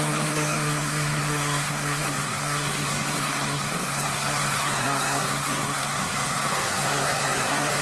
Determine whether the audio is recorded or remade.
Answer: remade